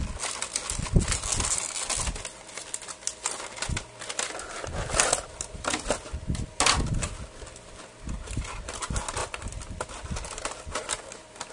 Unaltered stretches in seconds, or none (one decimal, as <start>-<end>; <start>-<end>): 0.0-11.5